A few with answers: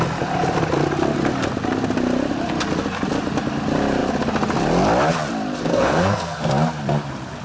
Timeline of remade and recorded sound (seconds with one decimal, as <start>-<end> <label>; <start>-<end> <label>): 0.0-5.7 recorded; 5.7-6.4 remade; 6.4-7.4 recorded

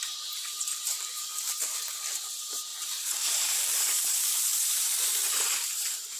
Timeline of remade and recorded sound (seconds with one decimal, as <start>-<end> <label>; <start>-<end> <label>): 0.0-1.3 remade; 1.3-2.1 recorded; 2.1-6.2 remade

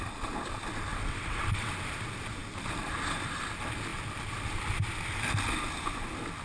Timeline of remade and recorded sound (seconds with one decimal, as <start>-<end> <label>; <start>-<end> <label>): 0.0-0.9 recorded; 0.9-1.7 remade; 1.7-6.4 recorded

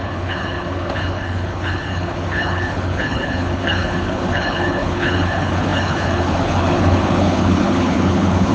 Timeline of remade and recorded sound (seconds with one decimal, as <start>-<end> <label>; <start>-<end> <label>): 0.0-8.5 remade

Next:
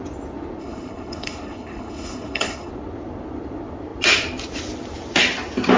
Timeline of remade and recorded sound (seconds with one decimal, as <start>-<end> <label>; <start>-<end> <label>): 0.0-0.6 recorded; 0.6-2.7 remade; 2.7-5.8 recorded

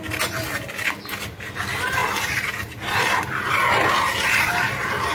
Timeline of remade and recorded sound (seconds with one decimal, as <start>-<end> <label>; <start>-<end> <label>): 0.0-2.0 recorded; 2.0-3.2 remade; 3.2-5.1 recorded

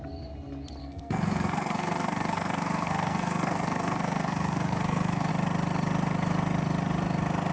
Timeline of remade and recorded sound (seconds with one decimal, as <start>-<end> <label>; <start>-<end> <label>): 0.0-0.8 recorded; 0.8-5.3 remade; 5.3-7.5 recorded